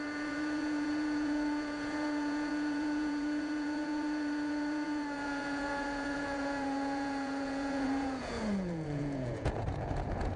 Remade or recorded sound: remade